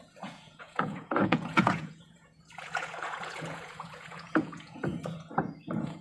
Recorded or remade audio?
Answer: remade